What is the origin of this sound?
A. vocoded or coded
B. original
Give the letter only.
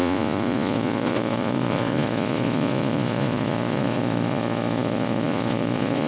A